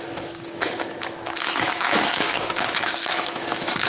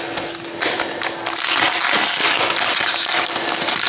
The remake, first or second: first